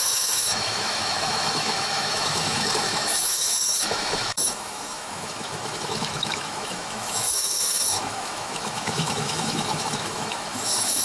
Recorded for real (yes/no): no